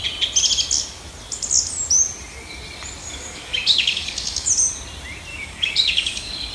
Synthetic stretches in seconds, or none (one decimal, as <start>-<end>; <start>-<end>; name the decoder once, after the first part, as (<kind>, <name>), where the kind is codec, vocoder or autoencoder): 3.0-4.5 (codec, DAC); 5.3-6.5